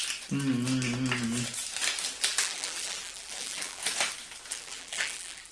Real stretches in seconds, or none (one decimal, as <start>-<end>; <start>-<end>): 0.0-2.3; 3.8-4.5